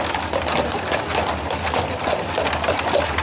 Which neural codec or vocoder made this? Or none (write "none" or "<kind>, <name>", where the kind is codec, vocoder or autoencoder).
none